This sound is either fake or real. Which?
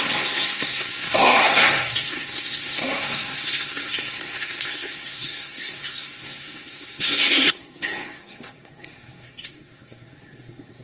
fake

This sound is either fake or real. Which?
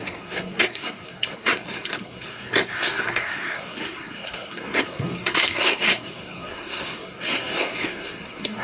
fake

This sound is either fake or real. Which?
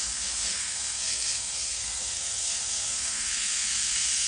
fake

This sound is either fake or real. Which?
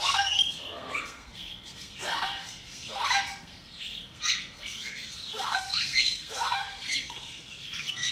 fake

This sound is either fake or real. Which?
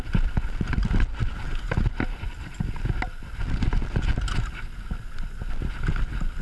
real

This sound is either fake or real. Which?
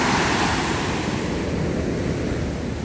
real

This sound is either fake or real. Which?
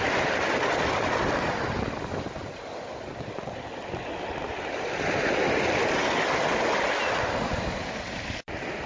real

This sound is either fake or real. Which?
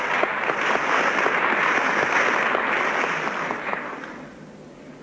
real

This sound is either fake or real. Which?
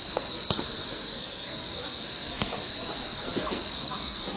fake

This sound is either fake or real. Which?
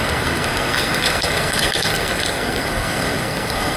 fake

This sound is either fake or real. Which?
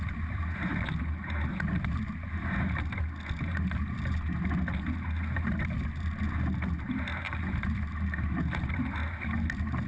real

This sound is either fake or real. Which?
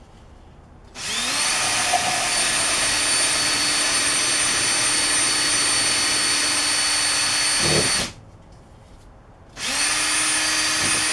real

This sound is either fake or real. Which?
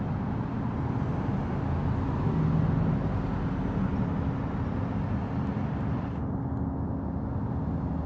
real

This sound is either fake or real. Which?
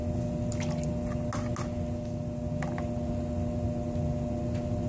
real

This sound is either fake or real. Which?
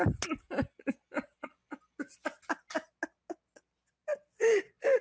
real